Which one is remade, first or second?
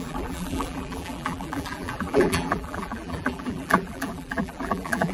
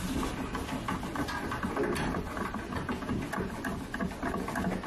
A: first